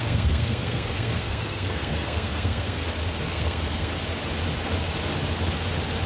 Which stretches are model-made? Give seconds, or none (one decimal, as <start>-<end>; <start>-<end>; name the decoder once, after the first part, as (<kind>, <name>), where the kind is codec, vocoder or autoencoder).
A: 0.0-2.8 (codec, SNAC); 3.3-3.9

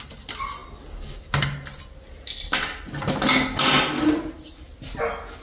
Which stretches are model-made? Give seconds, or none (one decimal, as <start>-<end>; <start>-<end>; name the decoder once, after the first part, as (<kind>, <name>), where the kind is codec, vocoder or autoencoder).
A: none

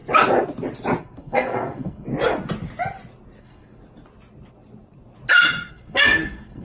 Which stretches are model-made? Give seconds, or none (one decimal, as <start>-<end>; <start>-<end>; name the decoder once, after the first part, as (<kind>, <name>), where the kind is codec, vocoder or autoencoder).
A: 1.0-2.1 (codec, SNAC); 3.4-3.8; 5.7-6.6

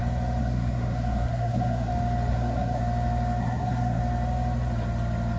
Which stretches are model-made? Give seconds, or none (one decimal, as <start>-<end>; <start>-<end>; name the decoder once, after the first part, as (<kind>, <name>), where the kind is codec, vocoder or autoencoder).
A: 0.4-1.9 (codec, SNAC); 2.3-2.8; 3.4-4.0

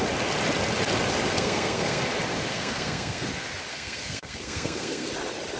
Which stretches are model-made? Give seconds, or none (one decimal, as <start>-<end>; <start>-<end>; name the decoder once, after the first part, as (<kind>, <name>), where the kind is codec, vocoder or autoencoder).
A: 1.3-2.0 (codec, SNAC); 2.5-3.3; 3.7-5.1

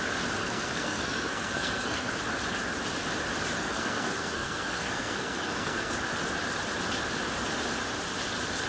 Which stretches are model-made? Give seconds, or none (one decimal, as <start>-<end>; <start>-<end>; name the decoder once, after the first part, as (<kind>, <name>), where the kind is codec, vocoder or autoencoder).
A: 0.4-2.1 (codec, SNAC); 3.6-5.9

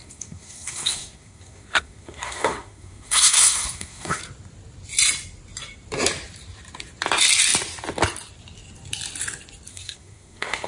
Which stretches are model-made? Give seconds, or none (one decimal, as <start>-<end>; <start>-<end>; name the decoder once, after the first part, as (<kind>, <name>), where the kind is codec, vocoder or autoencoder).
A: 0.0-4.2 (codec, SNAC); 9.7-10.7